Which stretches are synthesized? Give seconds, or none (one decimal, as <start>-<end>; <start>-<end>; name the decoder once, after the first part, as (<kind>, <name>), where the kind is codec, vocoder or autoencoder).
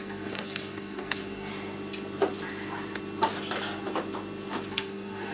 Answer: 0.0-1.5 (codec, SNAC); 4.7-5.3